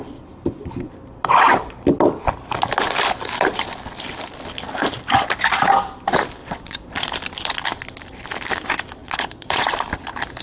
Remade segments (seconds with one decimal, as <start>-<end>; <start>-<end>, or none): 6.4-7.1; 9.0-9.7